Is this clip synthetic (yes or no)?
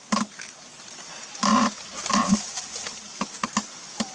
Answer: no